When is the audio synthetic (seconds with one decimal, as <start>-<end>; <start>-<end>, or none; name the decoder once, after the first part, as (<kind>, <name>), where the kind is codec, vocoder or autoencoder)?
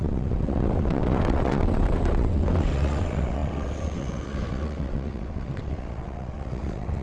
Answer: 0.0-7.0 (vocoder, WaveNeXt)